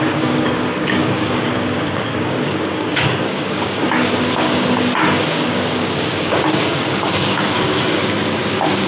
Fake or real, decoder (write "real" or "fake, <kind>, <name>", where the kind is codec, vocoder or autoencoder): fake, codec, DAC